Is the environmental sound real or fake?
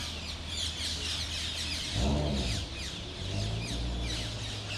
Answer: real